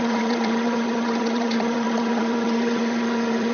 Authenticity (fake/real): fake